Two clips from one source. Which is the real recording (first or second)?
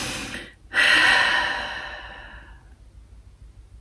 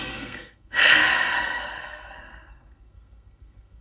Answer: first